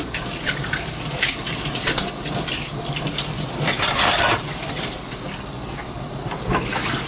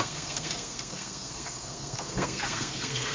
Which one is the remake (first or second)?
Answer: second